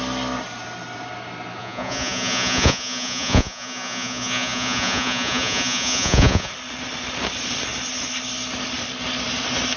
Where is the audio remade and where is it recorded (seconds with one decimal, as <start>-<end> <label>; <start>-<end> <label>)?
0.0-1.6 recorded; 1.6-6.5 remade; 6.5-9.8 recorded